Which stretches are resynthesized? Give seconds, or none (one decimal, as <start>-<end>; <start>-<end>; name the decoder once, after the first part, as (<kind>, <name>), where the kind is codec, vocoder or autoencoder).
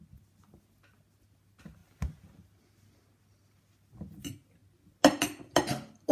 none